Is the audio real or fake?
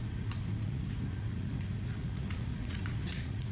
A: fake